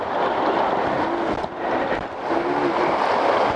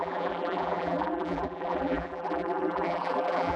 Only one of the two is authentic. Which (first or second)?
first